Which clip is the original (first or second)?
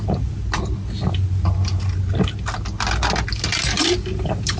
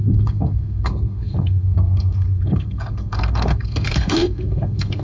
first